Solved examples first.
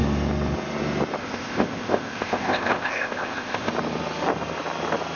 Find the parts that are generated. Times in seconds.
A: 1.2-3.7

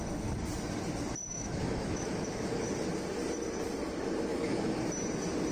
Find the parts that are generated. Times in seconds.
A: 1.3-2.6; 4.3-4.8

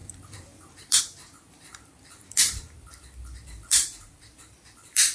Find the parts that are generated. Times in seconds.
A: 0.0-1.0; 1.7-5.1

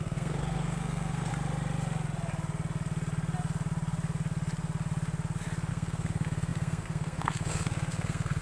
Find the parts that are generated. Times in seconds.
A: 0.0-1.3; 5.7-8.4

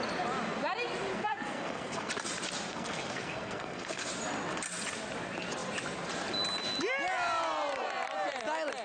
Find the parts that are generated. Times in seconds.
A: 1.1-2.1; 2.7-4.1

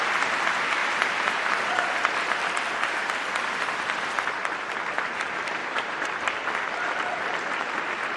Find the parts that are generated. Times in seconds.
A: 0.0-8.2

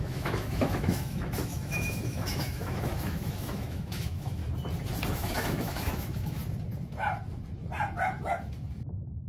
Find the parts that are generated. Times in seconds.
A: 0.0-4.4; 5.1-6.4; 8.9-9.3

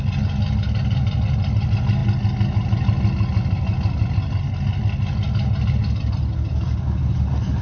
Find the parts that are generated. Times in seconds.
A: none